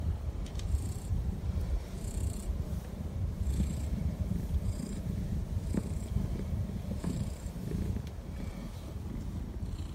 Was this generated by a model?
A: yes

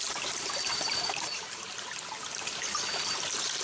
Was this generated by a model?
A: no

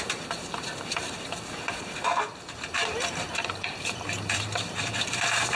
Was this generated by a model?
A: yes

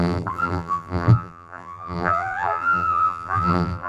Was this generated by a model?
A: yes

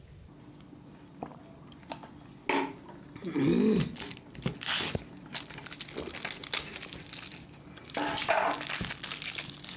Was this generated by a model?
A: no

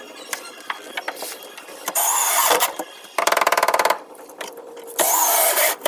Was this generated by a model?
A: yes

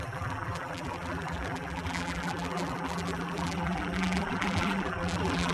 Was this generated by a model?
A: yes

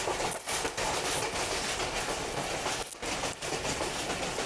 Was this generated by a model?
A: no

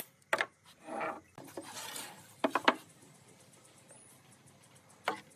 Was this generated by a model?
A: no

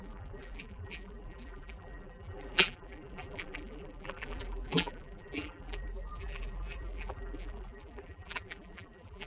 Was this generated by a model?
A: yes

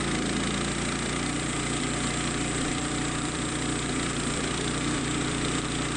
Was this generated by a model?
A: yes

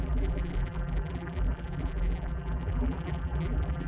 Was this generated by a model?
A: yes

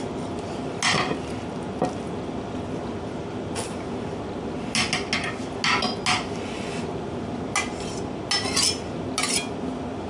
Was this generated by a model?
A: no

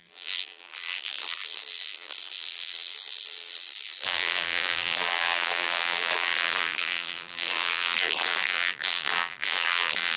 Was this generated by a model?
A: yes